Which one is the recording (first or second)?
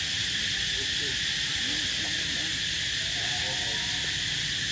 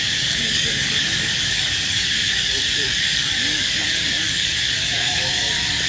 first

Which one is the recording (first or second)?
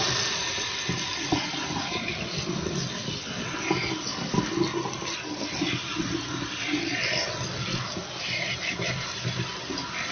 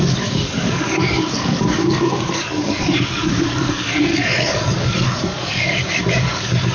first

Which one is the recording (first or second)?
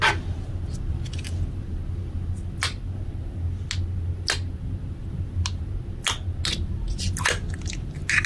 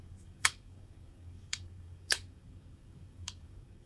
first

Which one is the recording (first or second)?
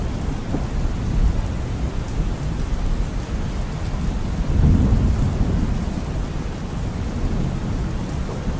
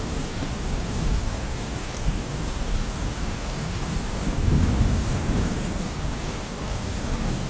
first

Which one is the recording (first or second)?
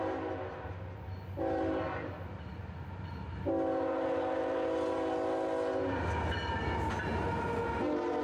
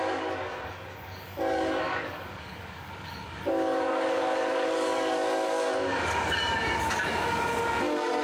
first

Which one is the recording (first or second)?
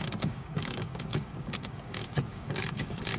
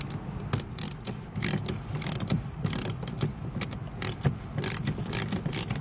second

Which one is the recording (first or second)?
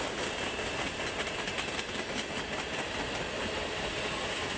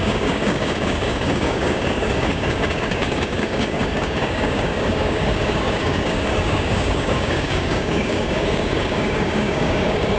first